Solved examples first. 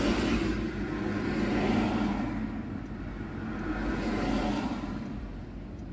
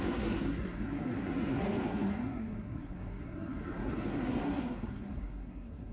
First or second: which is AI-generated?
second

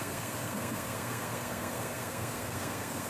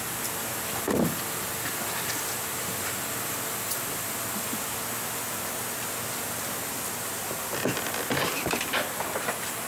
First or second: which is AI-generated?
first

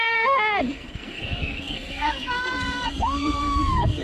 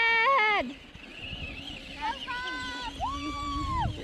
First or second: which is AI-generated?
first